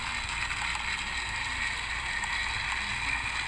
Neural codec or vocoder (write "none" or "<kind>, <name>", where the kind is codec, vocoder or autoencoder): none